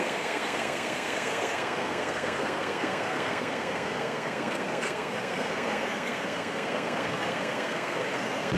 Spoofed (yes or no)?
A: yes